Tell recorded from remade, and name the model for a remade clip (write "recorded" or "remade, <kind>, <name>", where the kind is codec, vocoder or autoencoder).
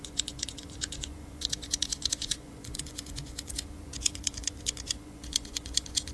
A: remade, vocoder, Vocos